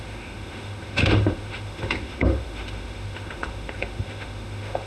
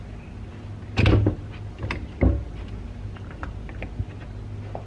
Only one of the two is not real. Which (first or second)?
first